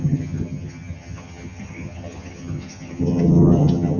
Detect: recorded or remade remade